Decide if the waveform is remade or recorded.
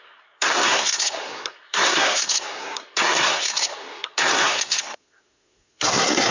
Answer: remade